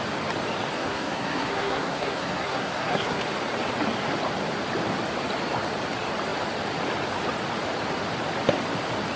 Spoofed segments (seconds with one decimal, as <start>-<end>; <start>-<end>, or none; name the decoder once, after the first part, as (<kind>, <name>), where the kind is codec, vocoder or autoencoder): 0.8-3.2 (codec, SNAC)